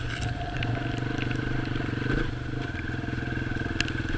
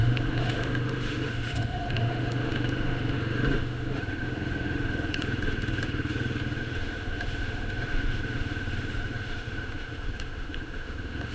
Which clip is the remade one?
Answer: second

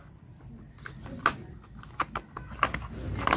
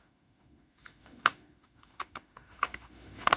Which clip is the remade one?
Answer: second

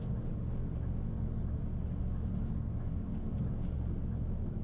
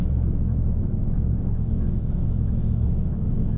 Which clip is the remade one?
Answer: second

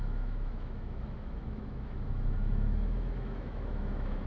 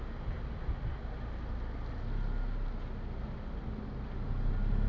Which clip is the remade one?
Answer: first